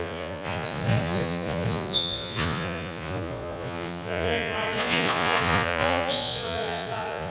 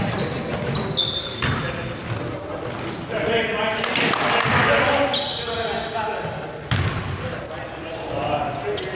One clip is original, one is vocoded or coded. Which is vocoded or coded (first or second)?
first